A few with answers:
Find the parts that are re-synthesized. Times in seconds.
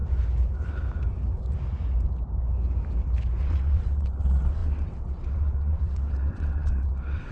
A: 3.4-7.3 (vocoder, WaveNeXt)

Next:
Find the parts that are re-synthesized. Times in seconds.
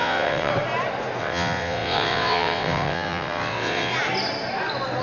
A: 0.0-0.5 (vocoder, WaveNeXt); 1.2-3.9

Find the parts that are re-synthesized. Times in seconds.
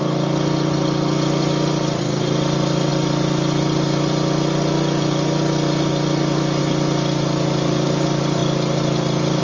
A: none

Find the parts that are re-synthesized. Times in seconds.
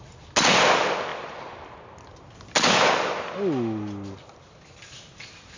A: none